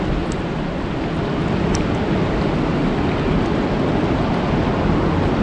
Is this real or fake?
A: real